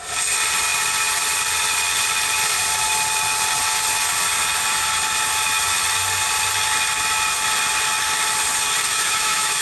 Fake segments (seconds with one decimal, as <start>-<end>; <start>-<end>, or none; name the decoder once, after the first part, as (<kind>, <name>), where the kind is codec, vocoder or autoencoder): 8.9-9.6 (autoencoder, DAC-VAE)